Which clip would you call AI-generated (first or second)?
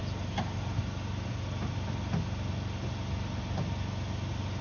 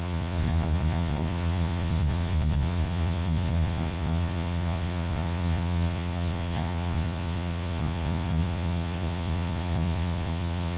second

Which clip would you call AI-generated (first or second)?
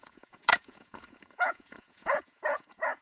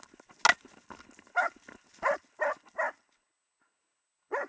first